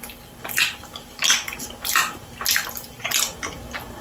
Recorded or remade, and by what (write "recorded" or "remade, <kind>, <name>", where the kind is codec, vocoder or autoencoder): recorded